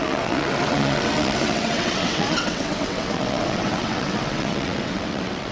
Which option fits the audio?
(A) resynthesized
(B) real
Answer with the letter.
A